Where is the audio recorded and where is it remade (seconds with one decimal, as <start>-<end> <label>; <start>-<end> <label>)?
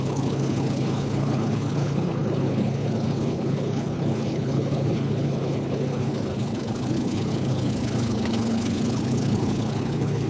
0.0-10.3 remade